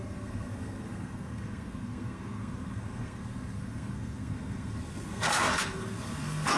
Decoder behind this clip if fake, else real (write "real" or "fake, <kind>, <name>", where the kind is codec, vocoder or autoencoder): fake, codec, SNAC